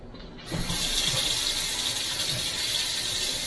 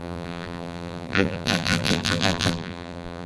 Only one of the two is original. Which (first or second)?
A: first